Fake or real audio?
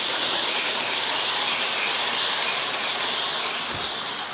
real